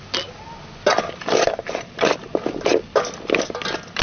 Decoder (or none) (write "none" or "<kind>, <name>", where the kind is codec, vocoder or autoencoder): none